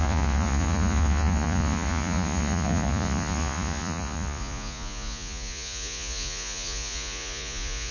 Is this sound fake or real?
fake